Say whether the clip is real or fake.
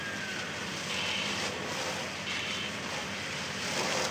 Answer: fake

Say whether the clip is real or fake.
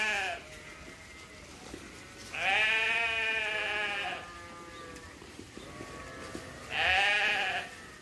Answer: real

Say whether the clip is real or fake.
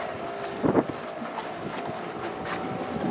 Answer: real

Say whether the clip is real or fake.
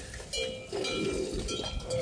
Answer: real